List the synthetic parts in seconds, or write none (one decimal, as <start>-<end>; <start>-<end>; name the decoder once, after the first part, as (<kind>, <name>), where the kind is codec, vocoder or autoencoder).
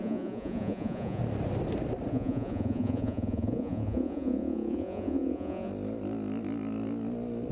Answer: 0.0-1.2 (vocoder, Vocos); 2.1-5.7